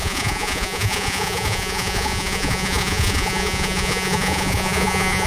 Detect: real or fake fake